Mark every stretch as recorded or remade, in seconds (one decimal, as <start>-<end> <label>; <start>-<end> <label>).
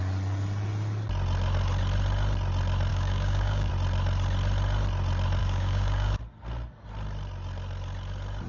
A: 0.0-2.9 recorded; 2.9-3.7 remade; 3.7-5.4 recorded; 5.4-6.2 remade; 6.2-8.5 recorded